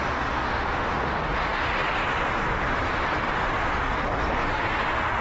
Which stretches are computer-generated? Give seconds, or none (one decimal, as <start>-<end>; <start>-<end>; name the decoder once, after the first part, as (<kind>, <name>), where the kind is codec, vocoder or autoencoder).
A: 0.5-1.1 (autoencoder, DAC-VAE)